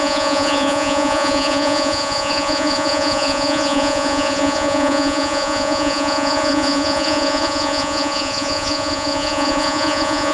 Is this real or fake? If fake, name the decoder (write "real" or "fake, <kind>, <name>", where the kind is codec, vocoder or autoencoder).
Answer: fake, vocoder, Vocos